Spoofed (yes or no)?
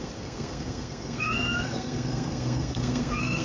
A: yes